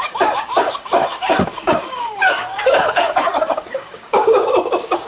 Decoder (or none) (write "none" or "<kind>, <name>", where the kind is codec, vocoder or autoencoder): codec, DAC